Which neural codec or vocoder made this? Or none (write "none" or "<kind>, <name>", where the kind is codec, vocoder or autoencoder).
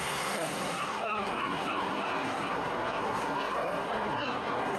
codec, SNAC